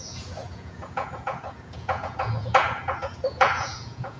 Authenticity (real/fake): fake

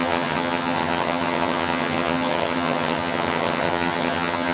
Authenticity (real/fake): fake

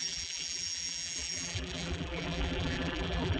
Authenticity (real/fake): fake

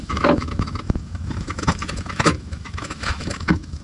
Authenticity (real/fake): fake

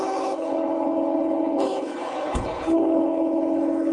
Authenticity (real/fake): fake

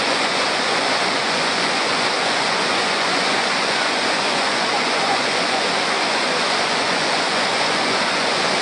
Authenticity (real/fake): fake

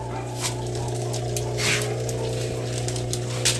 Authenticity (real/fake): real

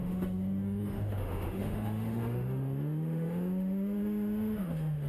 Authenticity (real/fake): fake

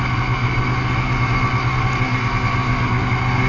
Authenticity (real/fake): real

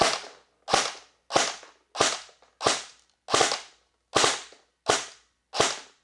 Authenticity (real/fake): real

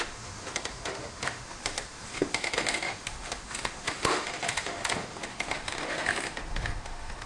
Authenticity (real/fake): fake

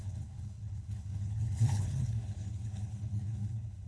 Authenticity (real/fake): fake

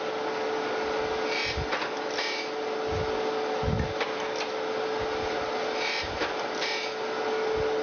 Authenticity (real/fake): real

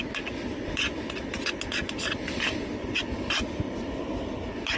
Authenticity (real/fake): real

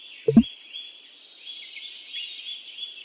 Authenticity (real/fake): real